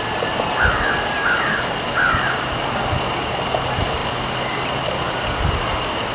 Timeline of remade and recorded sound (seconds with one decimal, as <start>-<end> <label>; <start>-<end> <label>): 0.0-6.1 recorded